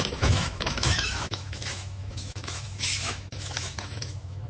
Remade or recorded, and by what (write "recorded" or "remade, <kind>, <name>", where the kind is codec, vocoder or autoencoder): remade, autoencoder, DAC-VAE